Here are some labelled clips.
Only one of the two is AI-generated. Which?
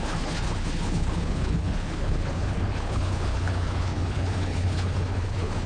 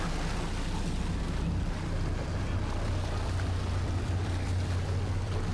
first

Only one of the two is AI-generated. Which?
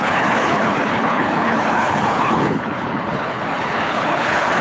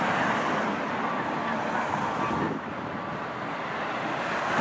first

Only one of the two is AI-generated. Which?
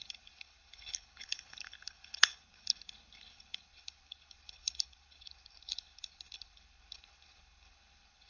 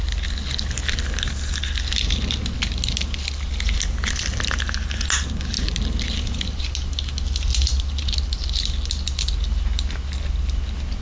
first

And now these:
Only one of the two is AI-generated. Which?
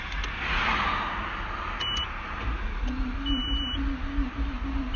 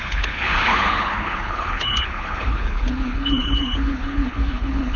second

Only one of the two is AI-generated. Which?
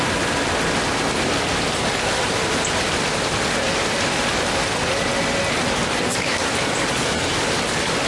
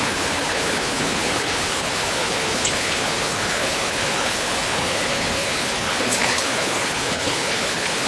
second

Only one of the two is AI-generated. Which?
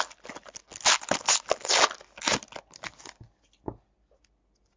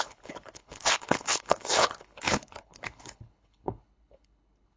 second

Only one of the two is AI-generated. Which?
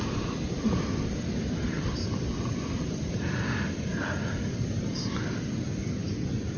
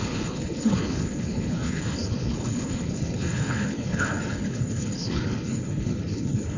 second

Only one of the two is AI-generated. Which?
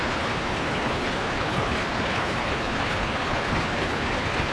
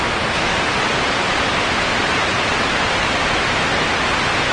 first